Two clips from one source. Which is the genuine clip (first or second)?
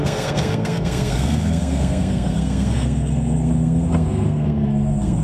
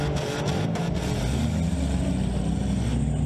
second